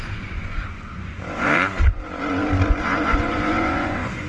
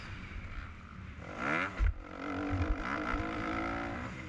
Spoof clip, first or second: first